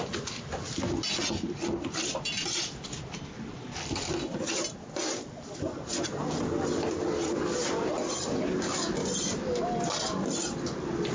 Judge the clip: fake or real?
real